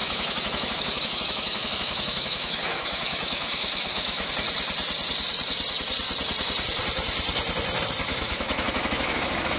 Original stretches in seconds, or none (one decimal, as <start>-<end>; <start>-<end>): 4.3-8.1